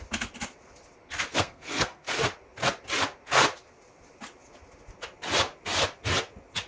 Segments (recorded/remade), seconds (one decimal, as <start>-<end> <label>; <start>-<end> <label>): 0.0-1.3 recorded; 1.3-2.1 remade; 2.1-6.7 recorded